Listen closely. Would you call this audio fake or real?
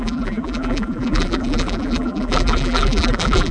fake